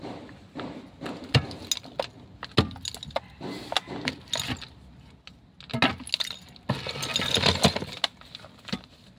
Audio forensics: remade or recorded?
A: recorded